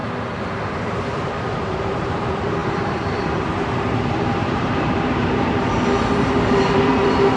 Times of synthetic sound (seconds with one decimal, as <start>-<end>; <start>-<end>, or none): 0.8-7.4

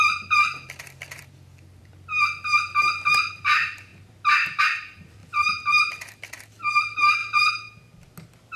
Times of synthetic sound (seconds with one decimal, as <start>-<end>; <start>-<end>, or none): 0.0-1.9; 3.3-3.9; 4.6-7.2

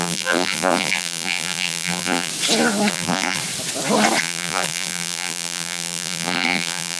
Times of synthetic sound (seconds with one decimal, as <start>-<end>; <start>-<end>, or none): 0.0-2.3; 2.9-3.4; 4.2-7.0

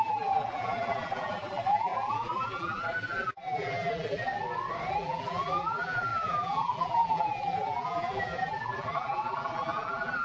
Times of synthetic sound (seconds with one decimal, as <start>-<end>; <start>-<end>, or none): 0.0-4.3; 4.9-10.2

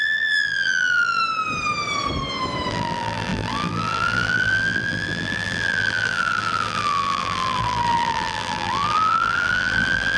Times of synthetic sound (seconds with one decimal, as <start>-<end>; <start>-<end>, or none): 0.0-1.2; 2.7-10.2

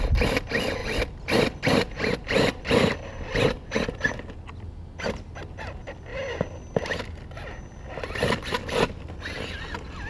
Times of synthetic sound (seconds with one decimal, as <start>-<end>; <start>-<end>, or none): 0.8-3.7

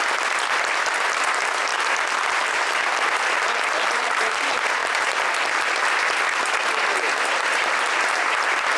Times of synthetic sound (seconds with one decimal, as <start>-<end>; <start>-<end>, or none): none

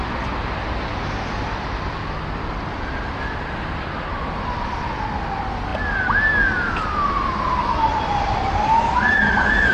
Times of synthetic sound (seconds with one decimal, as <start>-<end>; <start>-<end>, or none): none